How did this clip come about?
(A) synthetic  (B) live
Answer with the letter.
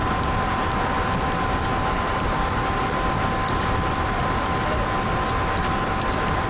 A